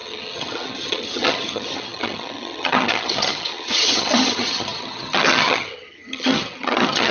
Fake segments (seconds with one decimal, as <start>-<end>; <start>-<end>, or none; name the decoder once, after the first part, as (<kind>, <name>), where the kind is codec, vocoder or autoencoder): 0.0-7.1 (vocoder, HiFi-GAN)